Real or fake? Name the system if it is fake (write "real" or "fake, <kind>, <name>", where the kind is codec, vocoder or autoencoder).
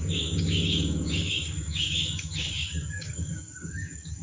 fake, codec, DAC